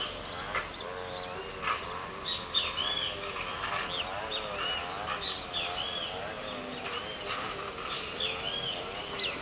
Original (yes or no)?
yes